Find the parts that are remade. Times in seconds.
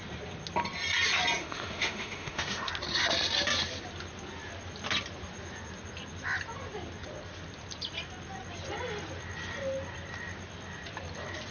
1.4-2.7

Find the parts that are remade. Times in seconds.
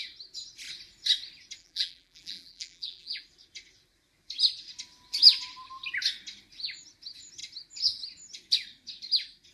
1.6-3.2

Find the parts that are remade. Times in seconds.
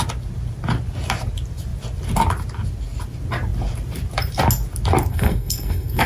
5.1-6.1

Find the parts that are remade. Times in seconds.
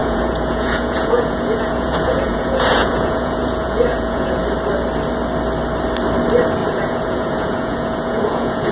0.0-4.4; 6.6-8.7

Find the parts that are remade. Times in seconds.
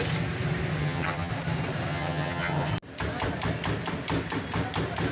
0.8-1.3; 1.9-2.7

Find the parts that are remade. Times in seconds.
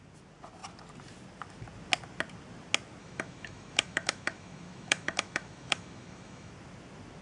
3.0-6.5